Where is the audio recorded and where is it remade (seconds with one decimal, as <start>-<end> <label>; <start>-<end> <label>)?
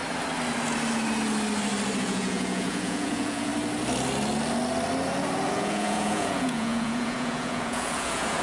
0.0-2.0 recorded; 2.0-3.5 remade; 3.5-5.5 recorded; 5.5-8.4 remade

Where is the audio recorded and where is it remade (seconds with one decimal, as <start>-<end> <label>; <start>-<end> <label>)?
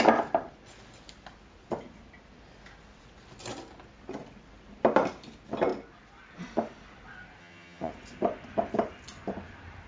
0.0-7.4 recorded; 7.4-7.9 remade; 7.9-9.9 recorded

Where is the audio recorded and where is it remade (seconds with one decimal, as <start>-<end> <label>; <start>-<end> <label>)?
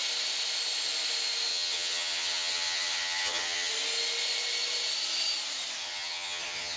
0.0-1.5 recorded; 1.5-3.7 remade; 3.7-5.8 recorded; 5.8-6.8 remade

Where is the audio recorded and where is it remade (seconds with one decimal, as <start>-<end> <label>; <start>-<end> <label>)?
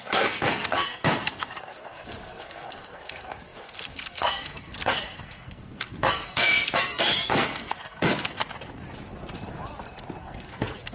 0.0-8.4 remade; 8.4-10.2 recorded; 10.2-10.9 remade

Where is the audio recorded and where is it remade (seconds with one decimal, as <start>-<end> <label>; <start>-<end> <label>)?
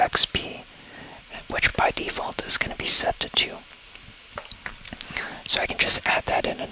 0.0-0.7 remade; 0.7-1.7 recorded; 1.7-5.7 remade; 5.7-6.7 recorded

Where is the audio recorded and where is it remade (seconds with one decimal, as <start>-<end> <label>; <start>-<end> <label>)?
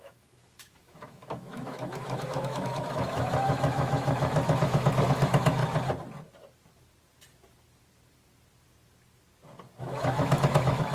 0.0-5.6 remade; 5.6-9.8 recorded; 9.8-10.9 remade